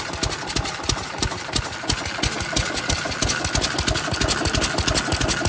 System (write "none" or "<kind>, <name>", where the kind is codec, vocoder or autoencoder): none